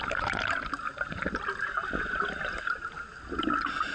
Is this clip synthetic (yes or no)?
no